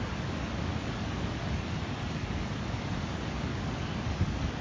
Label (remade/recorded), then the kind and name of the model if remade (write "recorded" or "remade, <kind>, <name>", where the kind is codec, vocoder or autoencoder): remade, codec, DAC